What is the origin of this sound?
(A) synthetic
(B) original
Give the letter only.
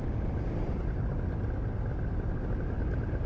B